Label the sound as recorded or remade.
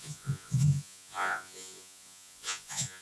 remade